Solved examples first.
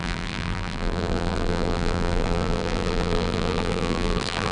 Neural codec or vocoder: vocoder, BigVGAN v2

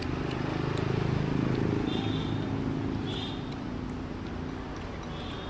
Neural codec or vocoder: none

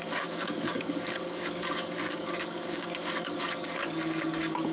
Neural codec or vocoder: codec, DAC